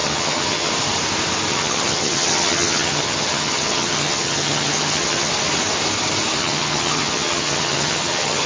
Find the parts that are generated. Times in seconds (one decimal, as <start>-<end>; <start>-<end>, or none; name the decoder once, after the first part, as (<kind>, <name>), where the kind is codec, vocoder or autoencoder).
0.0-0.7 (vocoder, HiFi-GAN); 1.5-5.3; 6.4-8.5